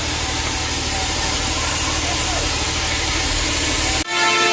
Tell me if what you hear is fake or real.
fake